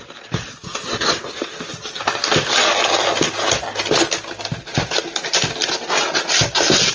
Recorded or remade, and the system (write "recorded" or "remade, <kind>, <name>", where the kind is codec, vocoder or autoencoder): recorded